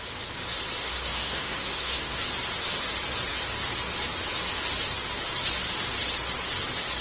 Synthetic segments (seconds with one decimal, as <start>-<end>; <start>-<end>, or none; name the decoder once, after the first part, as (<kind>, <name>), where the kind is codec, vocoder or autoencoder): 0.8-2.2 (codec, SNAC)